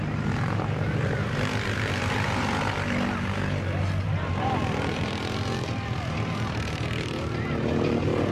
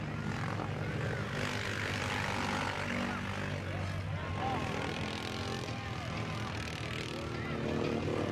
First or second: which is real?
second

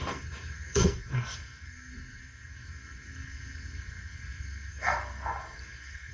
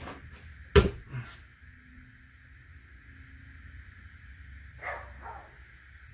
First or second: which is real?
second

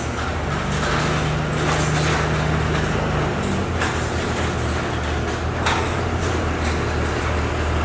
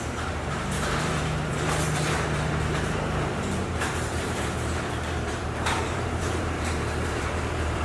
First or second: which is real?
first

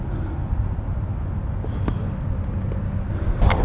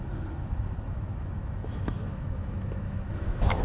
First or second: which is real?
first